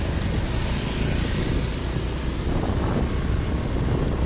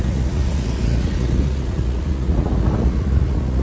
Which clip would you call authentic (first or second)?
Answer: first